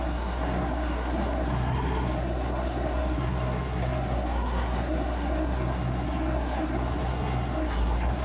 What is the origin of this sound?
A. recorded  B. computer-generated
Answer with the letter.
B